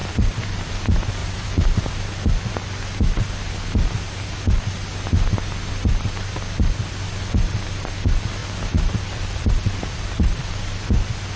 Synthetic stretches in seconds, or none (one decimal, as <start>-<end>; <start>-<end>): 0.0-0.7; 1.2-1.8; 8.4-10.5